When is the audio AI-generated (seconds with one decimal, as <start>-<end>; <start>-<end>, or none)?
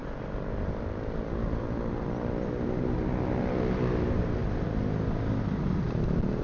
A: none